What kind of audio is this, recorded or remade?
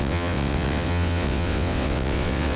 remade